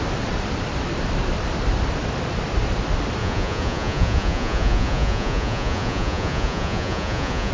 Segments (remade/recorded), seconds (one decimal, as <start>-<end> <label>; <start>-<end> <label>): 0.0-3.2 recorded; 3.2-7.5 remade